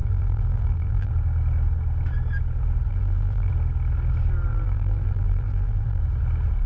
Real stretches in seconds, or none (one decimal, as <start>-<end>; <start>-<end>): 1.1-2.9; 3.5-4.5; 6.0-6.7